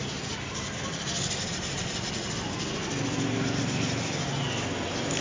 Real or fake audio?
real